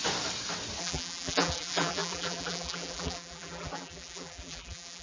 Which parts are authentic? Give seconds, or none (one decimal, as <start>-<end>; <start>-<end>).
0.0-0.8